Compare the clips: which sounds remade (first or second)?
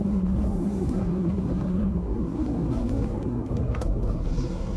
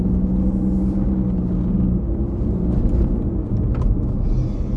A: first